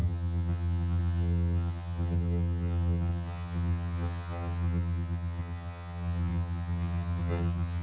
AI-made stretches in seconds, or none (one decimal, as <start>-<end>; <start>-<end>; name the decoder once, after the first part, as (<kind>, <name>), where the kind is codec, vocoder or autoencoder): 0.0-7.8 (vocoder, HiFi-GAN)